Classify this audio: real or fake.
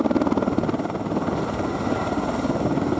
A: real